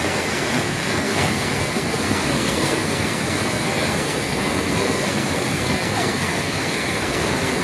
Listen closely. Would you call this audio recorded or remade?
remade